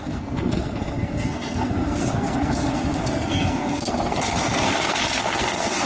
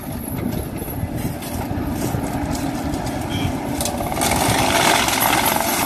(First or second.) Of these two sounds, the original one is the second